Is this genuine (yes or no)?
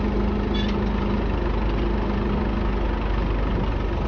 yes